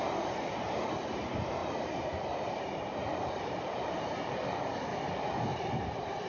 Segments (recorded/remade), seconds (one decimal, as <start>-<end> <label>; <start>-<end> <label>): 0.0-4.9 remade; 4.9-5.5 recorded; 5.5-6.3 remade